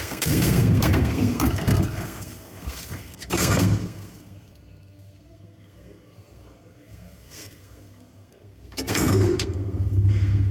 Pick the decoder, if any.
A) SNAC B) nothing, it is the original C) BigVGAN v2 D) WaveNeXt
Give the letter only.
A